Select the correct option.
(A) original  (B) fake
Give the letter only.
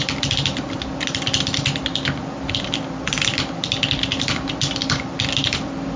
A